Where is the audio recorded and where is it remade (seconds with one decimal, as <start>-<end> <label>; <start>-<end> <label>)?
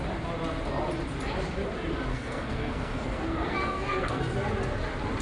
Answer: 0.0-2.1 recorded; 2.1-4.2 remade; 4.2-5.2 recorded